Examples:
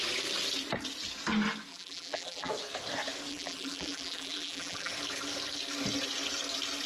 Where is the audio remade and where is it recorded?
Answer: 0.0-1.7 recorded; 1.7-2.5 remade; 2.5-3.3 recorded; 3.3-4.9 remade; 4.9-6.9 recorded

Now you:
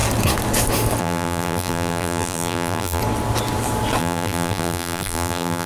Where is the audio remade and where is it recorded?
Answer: 0.0-1.0 recorded; 1.0-3.0 remade; 3.0-4.0 recorded; 4.0-5.7 remade

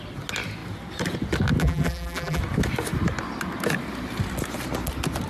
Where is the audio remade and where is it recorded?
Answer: 0.0-1.6 recorded; 1.6-2.4 remade; 2.4-5.3 recorded